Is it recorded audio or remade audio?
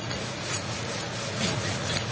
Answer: remade